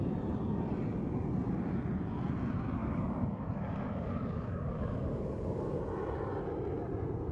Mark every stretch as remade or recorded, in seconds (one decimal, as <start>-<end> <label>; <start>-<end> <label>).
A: 0.0-2.8 recorded; 2.8-5.8 remade; 5.8-7.3 recorded

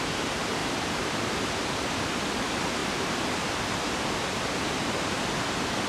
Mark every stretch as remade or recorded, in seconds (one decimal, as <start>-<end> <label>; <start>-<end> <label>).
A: 0.0-5.9 recorded